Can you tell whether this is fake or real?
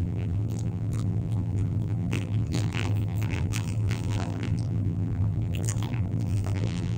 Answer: fake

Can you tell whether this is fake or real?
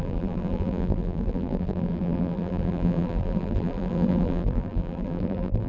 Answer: fake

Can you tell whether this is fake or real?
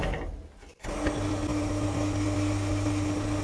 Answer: real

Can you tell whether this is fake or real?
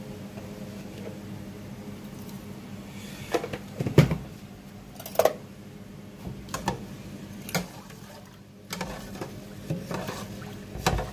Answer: real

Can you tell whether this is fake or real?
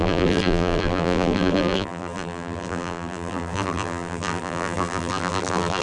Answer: fake